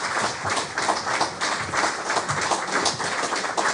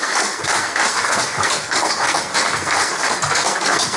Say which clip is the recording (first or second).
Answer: first